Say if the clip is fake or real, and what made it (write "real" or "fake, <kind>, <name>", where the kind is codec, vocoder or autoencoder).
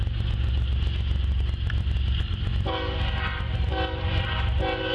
real